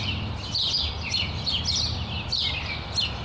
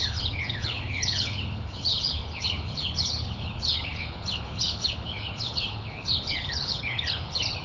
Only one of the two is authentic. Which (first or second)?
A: first